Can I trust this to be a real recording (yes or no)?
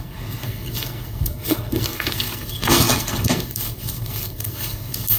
no